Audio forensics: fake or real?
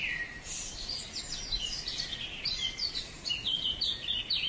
real